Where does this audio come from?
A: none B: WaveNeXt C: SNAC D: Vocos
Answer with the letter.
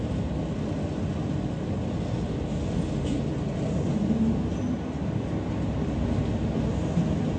A